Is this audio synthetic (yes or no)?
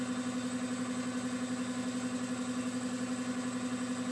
no